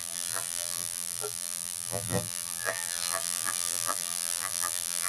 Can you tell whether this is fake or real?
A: fake